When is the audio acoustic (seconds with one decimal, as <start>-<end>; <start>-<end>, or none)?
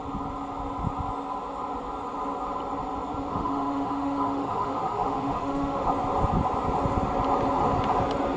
0.0-3.3; 5.9-8.4